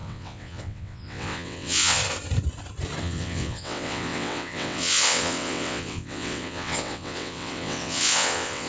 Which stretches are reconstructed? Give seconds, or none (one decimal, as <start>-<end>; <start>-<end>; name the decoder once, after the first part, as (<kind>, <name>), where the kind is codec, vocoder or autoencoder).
0.0-2.0 (vocoder, WaveNeXt); 3.0-8.7